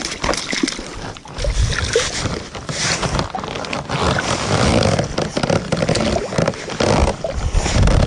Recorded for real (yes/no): yes